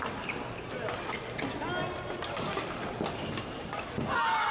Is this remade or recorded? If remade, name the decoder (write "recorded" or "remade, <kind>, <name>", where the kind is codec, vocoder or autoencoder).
recorded